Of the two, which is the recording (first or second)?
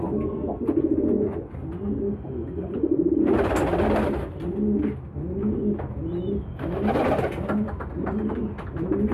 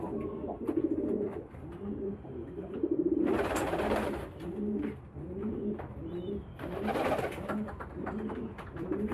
first